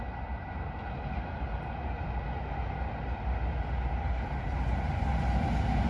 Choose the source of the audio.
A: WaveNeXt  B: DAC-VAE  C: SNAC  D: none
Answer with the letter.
D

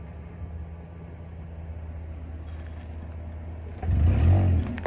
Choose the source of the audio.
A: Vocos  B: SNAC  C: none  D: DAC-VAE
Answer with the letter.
C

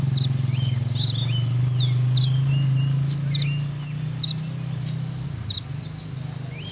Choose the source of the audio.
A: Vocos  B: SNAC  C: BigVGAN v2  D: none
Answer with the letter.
D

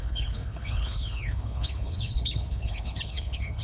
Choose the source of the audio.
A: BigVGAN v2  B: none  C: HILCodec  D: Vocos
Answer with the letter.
C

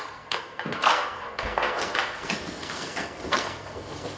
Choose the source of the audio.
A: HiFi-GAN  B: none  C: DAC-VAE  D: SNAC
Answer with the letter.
D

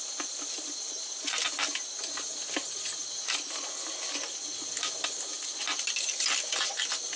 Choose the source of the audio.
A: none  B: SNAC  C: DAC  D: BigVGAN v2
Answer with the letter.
A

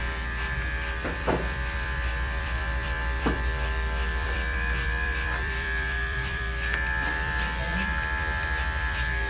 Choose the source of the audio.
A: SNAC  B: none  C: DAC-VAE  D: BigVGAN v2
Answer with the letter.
D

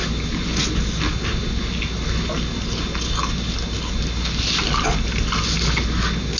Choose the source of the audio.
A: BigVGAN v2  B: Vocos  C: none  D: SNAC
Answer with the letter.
C